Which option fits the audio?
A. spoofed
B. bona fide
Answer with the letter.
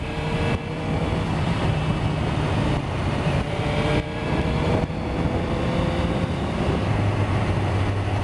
B